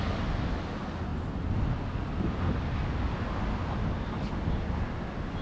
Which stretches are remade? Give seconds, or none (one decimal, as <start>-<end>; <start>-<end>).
none